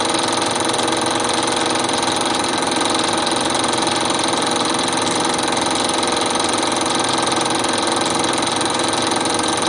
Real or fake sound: real